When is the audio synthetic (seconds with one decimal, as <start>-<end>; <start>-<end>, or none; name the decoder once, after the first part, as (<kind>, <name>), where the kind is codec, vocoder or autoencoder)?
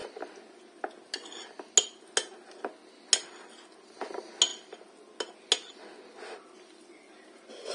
none